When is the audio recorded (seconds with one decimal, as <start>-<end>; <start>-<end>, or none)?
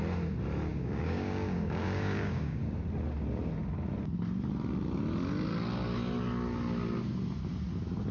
0.0-0.7; 2.6-8.1